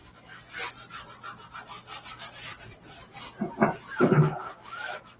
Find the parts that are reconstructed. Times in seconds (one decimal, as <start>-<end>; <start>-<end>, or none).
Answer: none